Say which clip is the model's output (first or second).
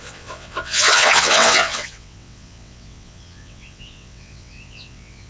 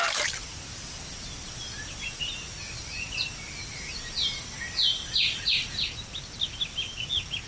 first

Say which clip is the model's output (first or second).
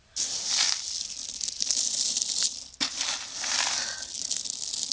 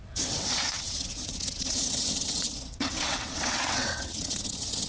second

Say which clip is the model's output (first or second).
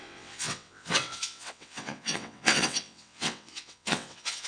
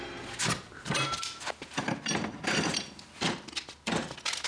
first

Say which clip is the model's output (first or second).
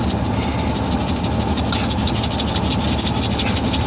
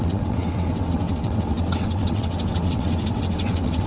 second